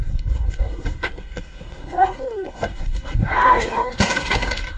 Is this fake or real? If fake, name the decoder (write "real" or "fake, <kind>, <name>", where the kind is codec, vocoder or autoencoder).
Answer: fake, codec, SNAC